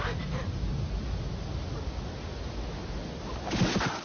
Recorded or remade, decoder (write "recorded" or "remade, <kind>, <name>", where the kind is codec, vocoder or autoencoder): recorded